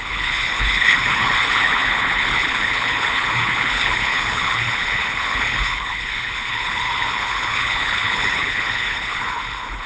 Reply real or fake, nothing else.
fake